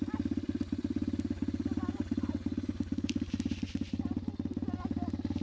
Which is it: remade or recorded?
recorded